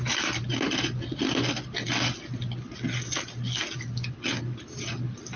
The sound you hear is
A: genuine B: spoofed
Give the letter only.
A